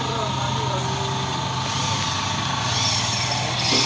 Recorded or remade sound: recorded